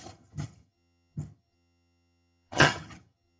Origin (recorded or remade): remade